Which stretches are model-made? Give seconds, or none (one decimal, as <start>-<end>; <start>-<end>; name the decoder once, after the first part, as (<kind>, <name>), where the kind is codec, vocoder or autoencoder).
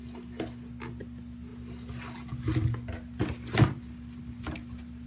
none